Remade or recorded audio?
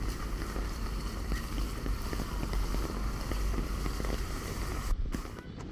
recorded